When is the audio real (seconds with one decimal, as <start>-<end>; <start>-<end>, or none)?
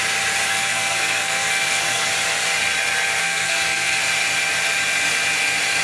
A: 0.0-0.5; 2.1-3.2; 4.0-5.8